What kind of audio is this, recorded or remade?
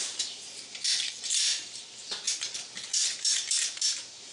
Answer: recorded